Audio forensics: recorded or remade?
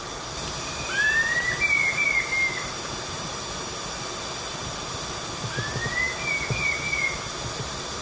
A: recorded